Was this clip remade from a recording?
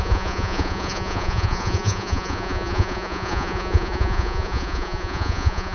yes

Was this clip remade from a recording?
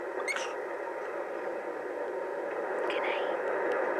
no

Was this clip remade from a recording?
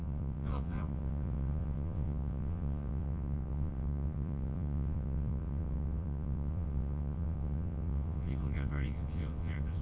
yes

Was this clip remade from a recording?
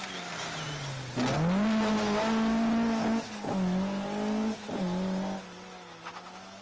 no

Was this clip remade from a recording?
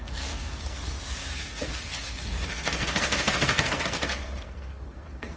yes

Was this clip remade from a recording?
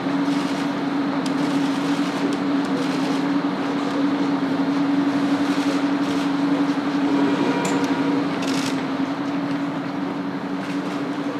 no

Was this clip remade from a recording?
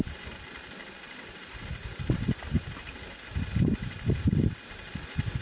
no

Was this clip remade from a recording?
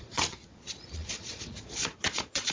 yes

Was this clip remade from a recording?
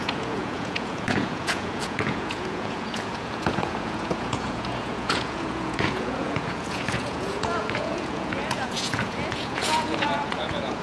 yes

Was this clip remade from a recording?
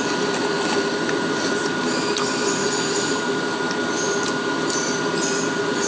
no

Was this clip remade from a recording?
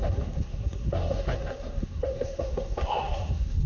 yes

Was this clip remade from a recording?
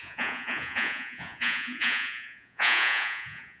yes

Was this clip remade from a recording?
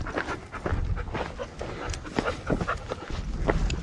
no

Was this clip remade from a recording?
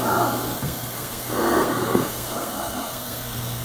yes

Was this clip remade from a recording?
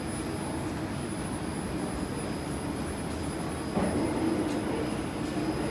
no